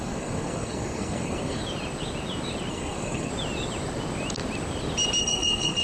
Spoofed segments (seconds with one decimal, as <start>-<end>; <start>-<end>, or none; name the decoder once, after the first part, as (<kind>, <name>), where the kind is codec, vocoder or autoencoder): 0.0-1.6 (codec, SNAC); 2.7-3.3; 5.2-5.8